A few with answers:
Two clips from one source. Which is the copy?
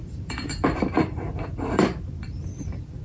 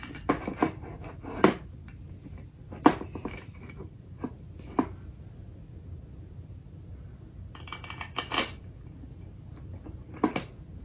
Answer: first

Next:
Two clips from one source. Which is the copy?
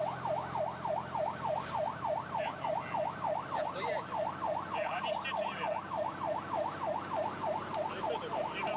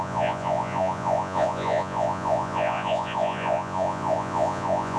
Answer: second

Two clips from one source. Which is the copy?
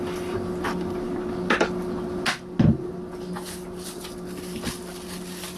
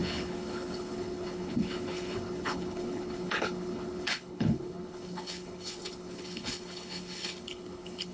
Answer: second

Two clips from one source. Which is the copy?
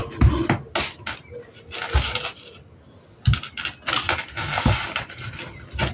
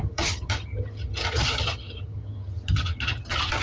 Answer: second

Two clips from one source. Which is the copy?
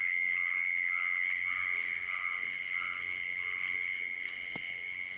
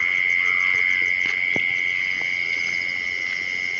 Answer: first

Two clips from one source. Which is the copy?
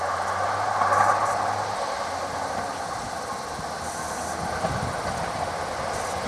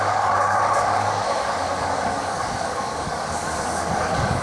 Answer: second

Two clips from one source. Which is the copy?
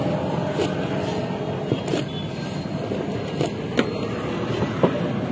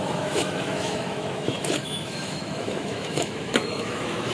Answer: second